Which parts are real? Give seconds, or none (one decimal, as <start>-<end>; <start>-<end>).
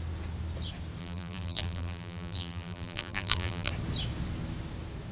0.0-1.0; 3.7-5.1